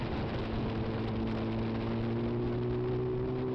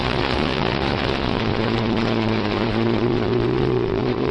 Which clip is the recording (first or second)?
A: first